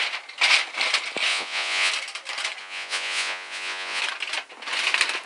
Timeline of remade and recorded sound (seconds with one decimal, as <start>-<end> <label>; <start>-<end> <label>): 0.0-1.3 recorded; 1.3-1.9 remade; 1.9-2.6 recorded; 2.6-4.0 remade; 4.0-5.3 recorded